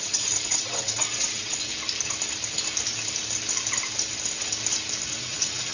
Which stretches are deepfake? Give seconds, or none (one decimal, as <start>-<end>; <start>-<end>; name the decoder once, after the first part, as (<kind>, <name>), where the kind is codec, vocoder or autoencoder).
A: 0.0-1.7 (vocoder, WaveNeXt); 5.1-5.7